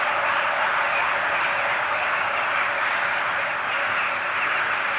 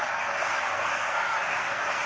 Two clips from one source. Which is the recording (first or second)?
first